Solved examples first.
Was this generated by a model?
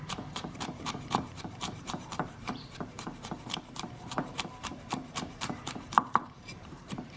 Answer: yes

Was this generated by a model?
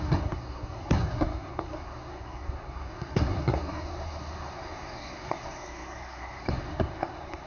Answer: yes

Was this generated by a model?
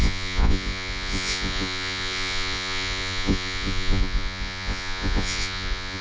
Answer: yes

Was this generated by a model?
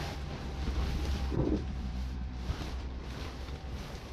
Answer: yes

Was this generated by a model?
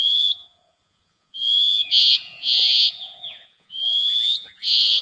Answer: yes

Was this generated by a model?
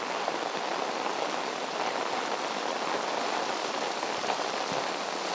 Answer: no